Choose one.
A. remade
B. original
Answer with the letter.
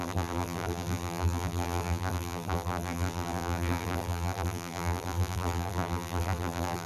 A